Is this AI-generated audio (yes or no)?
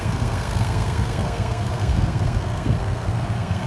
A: yes